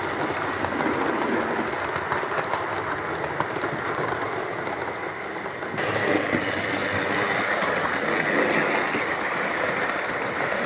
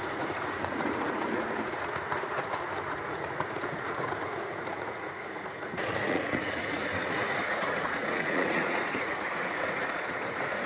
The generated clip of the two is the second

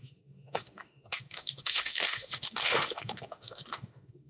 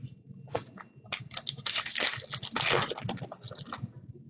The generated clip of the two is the first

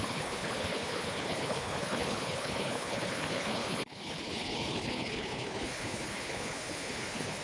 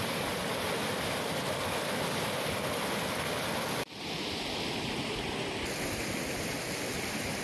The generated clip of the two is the first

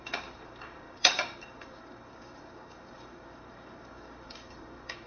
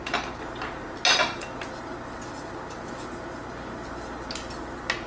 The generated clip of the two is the first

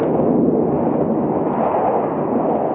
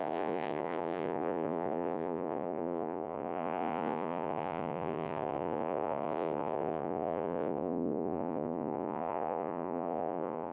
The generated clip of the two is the second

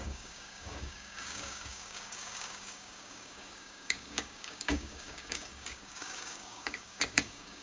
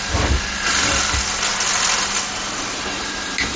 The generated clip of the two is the first